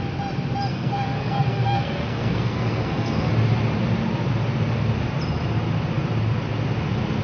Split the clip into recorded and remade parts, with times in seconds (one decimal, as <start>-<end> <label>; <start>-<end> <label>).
0.0-0.7 recorded; 0.7-3.3 remade; 3.3-7.2 recorded

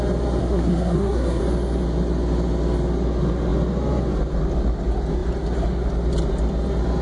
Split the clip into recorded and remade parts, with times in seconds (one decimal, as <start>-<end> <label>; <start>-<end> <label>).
0.0-0.4 recorded; 0.4-1.4 remade; 1.4-7.0 recorded

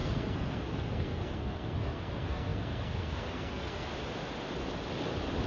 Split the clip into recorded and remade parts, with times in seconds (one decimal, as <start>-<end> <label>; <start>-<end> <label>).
0.0-3.9 remade; 3.9-5.5 recorded